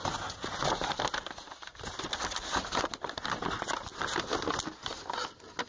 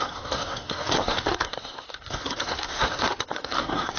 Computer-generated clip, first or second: second